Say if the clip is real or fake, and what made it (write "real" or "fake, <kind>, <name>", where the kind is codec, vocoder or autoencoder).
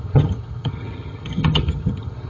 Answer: fake, vocoder, HiFi-GAN